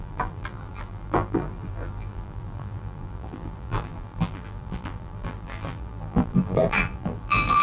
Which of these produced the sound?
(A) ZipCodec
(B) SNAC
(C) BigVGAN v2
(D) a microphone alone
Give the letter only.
C